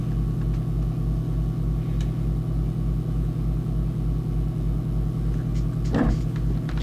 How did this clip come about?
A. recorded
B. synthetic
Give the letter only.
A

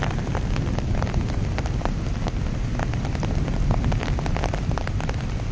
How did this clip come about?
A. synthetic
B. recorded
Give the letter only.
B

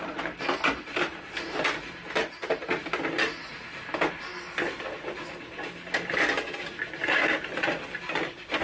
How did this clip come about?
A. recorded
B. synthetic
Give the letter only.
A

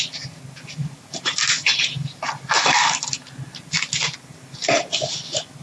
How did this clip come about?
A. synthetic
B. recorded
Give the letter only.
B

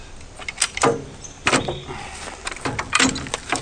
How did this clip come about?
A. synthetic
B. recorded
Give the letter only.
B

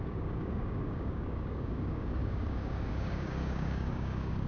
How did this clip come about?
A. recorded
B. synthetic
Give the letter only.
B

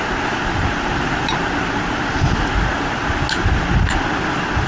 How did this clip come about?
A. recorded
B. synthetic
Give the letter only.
A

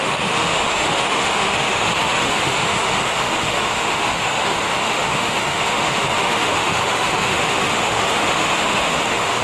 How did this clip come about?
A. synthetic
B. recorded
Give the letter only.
A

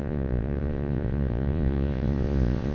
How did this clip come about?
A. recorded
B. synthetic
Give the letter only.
B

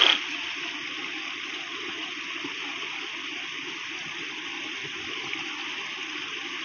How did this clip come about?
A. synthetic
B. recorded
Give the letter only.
B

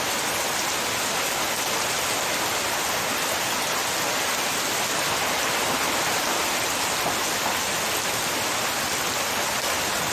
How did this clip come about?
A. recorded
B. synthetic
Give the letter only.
A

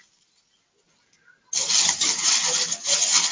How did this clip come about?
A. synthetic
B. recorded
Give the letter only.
B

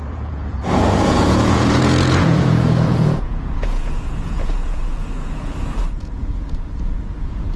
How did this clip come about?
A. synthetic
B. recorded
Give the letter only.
A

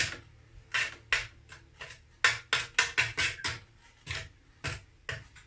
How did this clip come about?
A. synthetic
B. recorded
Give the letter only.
B